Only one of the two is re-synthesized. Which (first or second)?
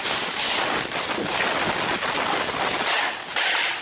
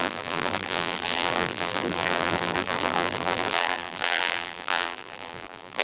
second